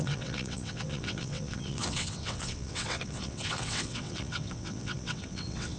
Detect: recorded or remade remade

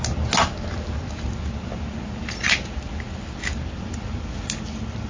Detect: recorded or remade recorded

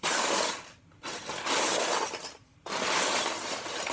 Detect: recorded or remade recorded